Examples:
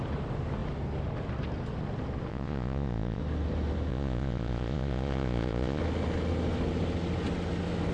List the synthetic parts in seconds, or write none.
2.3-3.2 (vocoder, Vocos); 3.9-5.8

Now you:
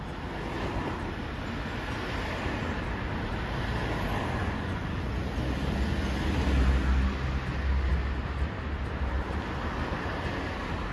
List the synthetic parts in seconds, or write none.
4.4-4.9 (vocoder, Vocos)

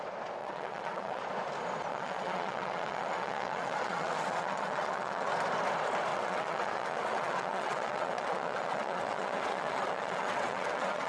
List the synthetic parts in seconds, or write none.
0.4-1.2 (vocoder, WaveNeXt); 1.9-5.3; 6.1-11.1

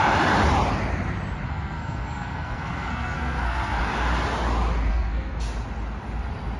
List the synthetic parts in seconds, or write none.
1.5-3.8 (codec, SNAC); 4.9-5.4